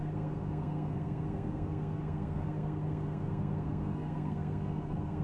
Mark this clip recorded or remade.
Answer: remade